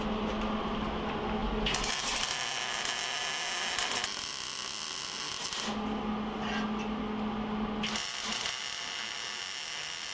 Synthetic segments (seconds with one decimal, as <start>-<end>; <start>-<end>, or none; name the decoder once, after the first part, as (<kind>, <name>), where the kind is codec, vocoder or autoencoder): none